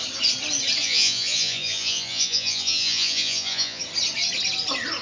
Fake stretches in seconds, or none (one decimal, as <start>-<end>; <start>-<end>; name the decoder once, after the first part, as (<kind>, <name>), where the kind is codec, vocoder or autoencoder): 0.8-3.8 (vocoder, Vocos)